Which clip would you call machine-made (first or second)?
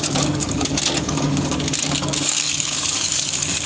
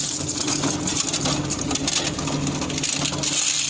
first